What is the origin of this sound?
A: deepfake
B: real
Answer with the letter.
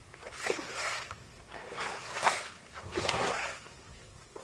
A